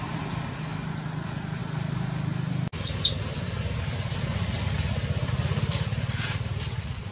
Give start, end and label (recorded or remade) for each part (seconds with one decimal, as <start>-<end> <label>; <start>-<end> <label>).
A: 0.0-7.1 recorded